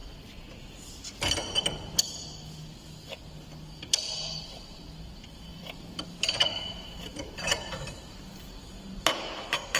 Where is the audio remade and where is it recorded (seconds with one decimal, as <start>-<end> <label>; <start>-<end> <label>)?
0.0-5.5 recorded; 5.5-6.5 remade; 6.5-7.5 recorded; 7.5-8.7 remade; 8.7-9.8 recorded